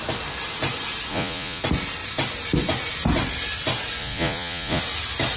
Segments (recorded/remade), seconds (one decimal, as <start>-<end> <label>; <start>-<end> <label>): 0.0-1.1 recorded; 1.1-1.6 remade; 1.6-4.0 recorded; 4.0-4.8 remade; 4.8-5.4 recorded